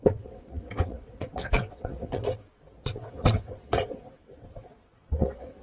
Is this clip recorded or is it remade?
remade